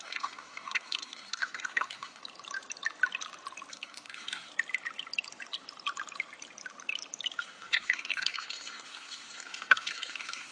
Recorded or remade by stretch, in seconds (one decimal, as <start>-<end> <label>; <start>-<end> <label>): 0.0-2.2 remade; 2.2-3.7 recorded; 3.7-4.5 remade; 4.5-7.4 recorded; 7.4-10.5 remade